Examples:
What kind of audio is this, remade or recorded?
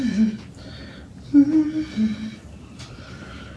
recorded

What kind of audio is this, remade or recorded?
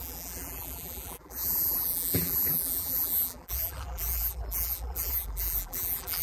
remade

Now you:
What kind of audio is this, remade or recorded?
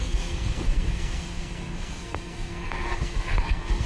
remade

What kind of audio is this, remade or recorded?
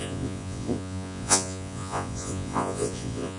remade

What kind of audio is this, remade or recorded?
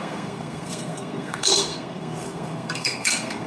remade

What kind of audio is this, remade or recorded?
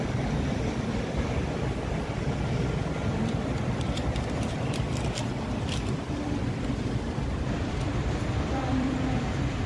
remade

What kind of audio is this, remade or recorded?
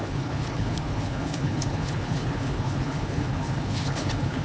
remade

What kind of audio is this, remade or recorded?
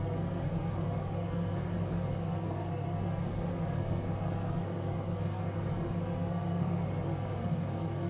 remade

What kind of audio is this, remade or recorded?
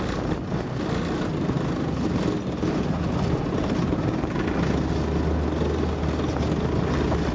recorded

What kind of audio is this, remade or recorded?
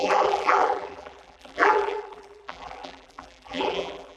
remade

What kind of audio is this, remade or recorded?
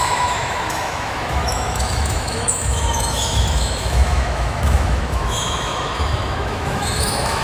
remade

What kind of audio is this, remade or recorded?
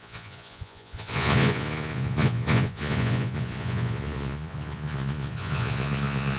remade